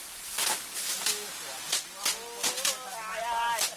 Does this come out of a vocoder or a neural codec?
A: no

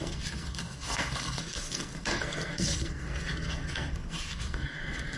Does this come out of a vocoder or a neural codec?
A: yes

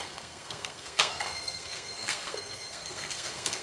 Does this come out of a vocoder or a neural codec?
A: yes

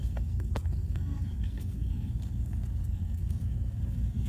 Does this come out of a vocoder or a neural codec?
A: yes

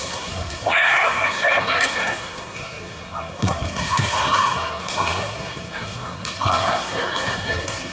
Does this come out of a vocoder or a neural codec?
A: yes